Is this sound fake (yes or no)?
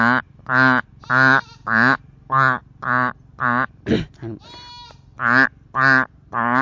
no